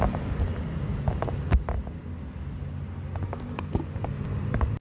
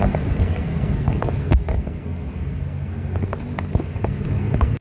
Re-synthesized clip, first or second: second